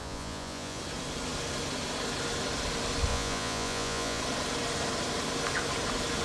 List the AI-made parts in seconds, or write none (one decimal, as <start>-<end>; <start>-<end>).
0.0-0.8; 3.1-4.2